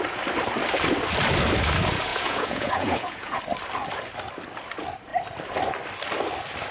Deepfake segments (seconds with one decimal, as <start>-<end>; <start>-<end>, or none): 2.1-3.4